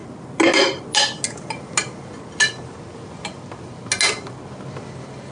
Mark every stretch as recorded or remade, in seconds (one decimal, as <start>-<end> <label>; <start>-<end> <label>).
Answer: 0.0-5.3 recorded